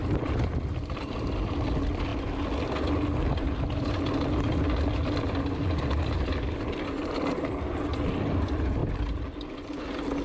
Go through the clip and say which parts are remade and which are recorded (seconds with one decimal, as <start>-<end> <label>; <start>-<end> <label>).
0.0-10.2 recorded